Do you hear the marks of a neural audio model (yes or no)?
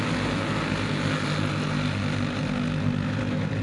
no